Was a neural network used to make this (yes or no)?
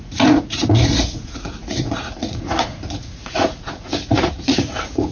yes